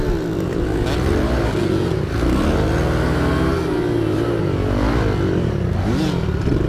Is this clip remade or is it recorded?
recorded